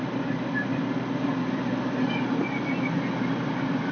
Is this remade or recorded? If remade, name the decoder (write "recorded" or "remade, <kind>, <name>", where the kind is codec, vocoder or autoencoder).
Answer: recorded